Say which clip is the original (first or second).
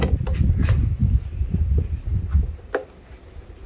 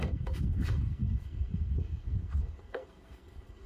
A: first